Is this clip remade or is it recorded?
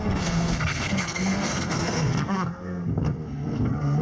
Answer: remade